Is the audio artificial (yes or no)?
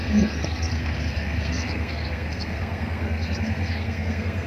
yes